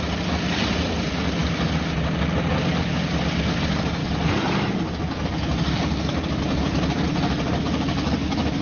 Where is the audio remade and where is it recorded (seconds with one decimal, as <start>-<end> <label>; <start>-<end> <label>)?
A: 0.0-4.0 recorded; 4.0-7.6 remade; 7.6-8.6 recorded